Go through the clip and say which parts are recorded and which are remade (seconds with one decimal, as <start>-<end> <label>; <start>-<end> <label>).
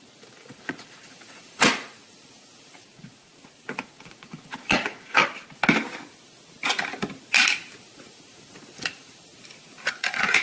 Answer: 0.0-5.2 remade; 5.2-7.8 recorded; 7.8-9.3 remade; 9.3-9.9 recorded; 9.9-10.4 remade